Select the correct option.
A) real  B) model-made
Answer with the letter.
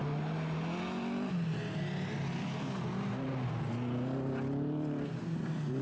A